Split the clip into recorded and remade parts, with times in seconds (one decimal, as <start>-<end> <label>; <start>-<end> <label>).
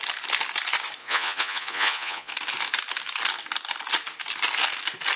0.0-1.0 recorded; 1.0-2.3 remade; 2.3-5.2 recorded